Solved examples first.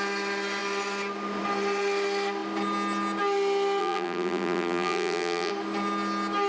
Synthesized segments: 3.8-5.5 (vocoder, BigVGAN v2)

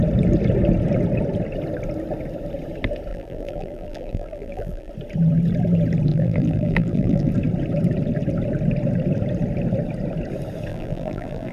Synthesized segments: 3.1-4.9 (vocoder, BigVGAN v2); 6.1-7.3; 10.7-11.5

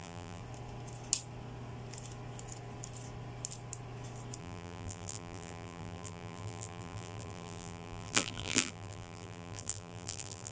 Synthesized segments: 0.0-0.4 (vocoder, BigVGAN v2); 4.4-10.5